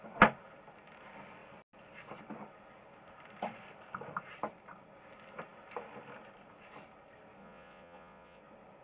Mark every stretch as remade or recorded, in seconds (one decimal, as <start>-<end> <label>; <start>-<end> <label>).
0.0-7.4 recorded; 7.4-8.4 remade; 8.4-8.8 recorded